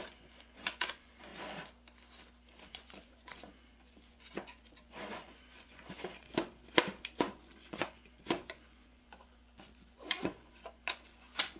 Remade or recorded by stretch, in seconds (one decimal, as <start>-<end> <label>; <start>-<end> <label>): 0.0-1.3 remade; 1.3-2.7 recorded; 2.7-6.6 remade; 6.6-7.2 recorded; 7.2-11.6 remade